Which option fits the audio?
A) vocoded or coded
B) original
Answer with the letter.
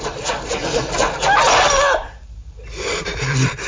B